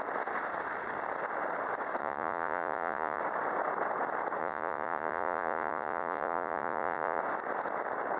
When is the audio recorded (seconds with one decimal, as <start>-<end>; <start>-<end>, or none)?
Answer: 0.0-2.0; 3.2-4.4; 7.2-8.2